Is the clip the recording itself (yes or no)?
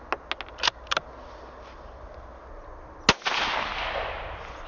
yes